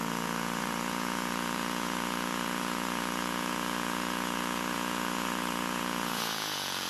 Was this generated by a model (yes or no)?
yes